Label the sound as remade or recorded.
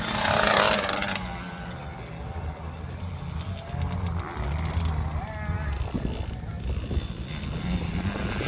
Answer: recorded